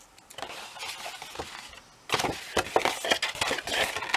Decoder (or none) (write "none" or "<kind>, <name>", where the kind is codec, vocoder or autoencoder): none